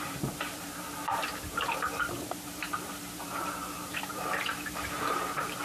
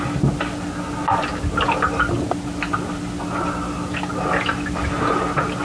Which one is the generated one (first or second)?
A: first